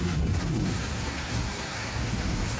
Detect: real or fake fake